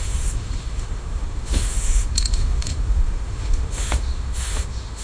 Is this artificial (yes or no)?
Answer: yes